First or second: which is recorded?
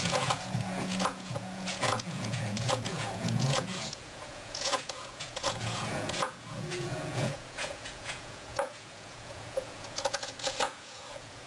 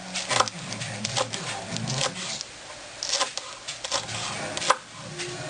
second